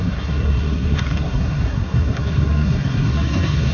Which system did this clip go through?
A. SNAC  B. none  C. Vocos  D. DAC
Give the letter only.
A